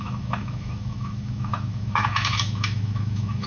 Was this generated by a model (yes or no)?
yes